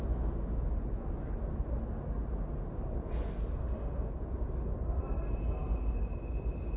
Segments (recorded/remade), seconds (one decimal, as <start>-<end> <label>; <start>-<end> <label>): 0.0-3.6 recorded; 3.6-4.1 remade; 4.1-6.8 recorded